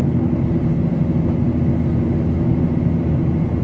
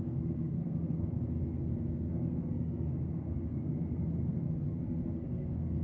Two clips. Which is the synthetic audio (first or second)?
second